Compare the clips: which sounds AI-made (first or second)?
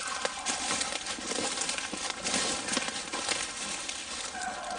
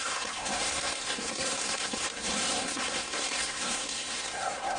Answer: second